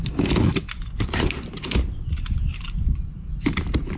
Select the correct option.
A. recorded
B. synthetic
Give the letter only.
A